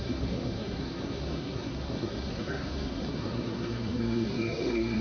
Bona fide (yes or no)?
no